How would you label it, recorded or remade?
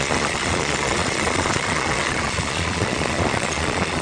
remade